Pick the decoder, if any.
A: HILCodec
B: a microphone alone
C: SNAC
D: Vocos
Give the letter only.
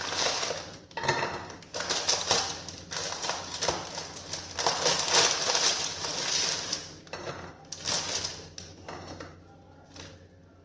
B